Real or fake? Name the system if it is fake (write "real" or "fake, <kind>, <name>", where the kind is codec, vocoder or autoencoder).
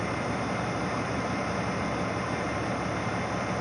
real